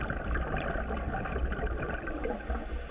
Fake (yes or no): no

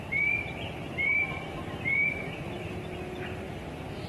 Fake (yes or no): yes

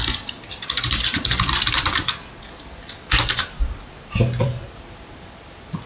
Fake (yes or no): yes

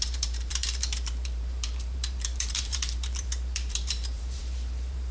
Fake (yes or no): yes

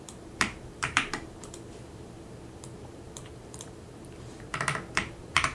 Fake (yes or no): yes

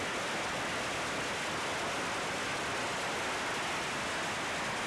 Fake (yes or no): no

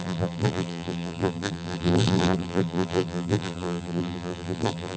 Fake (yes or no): yes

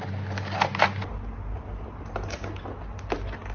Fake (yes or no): no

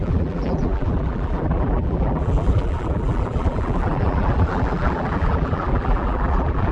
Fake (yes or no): yes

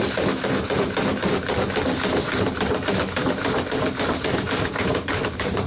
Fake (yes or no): yes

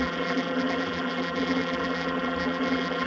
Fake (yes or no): yes